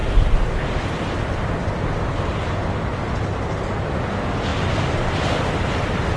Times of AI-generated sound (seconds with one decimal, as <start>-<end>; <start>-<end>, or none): none